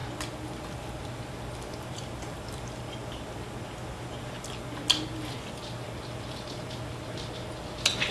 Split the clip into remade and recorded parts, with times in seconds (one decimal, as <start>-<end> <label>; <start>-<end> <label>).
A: 0.0-8.1 recorded